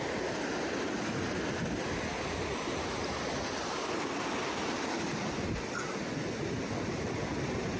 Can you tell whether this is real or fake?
real